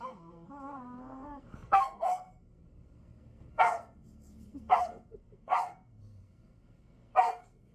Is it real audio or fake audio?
fake